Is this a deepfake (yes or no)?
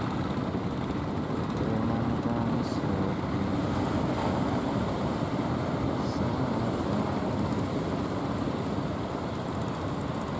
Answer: no